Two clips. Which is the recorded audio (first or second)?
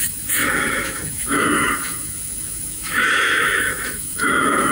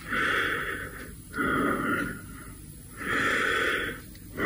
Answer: second